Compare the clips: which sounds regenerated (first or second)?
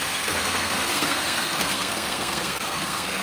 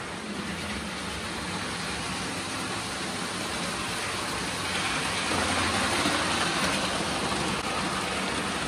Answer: first